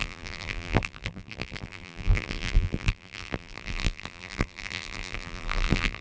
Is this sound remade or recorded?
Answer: remade